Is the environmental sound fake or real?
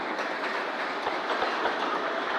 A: real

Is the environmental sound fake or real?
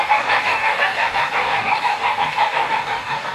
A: fake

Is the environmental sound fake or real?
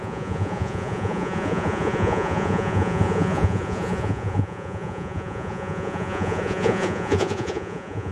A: fake